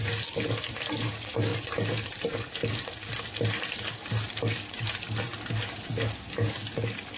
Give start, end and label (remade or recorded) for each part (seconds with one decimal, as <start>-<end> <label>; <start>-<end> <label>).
0.0-7.2 recorded